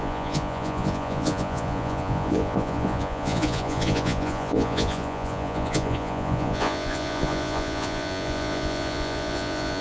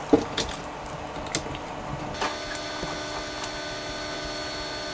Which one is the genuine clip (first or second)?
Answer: second